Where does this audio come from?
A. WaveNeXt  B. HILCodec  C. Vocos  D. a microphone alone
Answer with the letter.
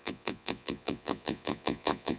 C